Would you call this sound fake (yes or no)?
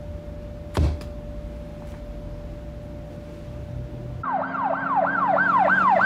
no